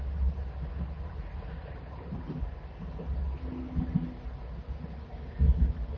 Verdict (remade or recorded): recorded